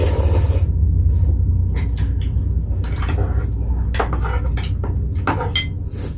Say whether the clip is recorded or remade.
recorded